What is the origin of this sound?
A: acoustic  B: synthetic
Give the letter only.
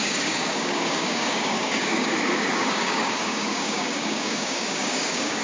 B